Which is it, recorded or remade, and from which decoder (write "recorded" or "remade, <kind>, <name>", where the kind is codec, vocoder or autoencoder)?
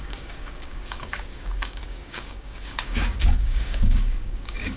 remade, codec, DAC